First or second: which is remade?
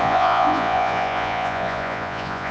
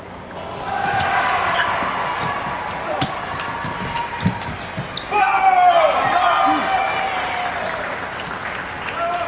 first